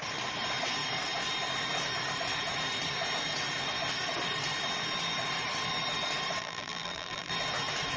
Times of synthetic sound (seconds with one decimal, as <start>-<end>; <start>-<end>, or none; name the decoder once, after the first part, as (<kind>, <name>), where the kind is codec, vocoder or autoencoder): 6.4-7.3 (vocoder, BigVGAN v2)